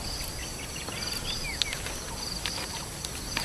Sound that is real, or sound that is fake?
real